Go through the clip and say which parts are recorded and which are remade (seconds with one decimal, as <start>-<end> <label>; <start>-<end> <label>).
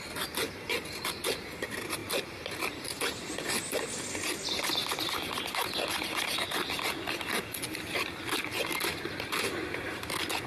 0.0-10.5 recorded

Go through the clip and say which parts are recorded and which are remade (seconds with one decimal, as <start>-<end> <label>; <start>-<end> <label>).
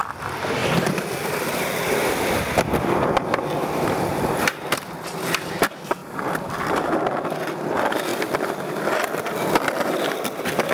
0.0-0.6 recorded; 0.6-4.9 remade; 4.9-6.0 recorded; 6.0-6.8 remade; 6.8-8.1 recorded; 8.1-10.7 remade